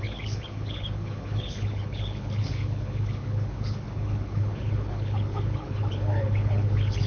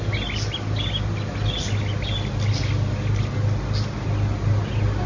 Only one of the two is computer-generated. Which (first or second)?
first